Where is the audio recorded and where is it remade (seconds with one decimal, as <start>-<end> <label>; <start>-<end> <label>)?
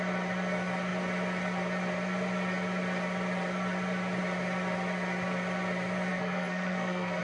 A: 0.0-6.1 recorded; 6.1-7.2 remade